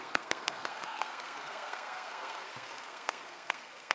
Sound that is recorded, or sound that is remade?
remade